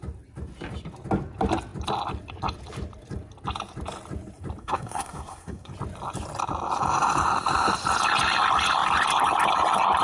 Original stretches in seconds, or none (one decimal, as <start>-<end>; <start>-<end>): 0.0-4.6; 5.7-10.0